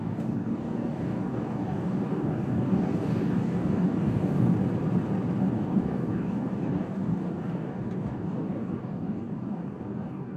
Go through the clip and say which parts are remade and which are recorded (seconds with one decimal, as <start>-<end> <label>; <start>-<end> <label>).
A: 0.0-4.5 remade; 4.5-5.4 recorded; 5.4-10.4 remade